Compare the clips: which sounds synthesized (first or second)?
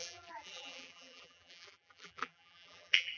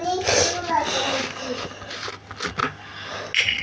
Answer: first